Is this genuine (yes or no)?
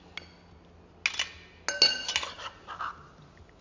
yes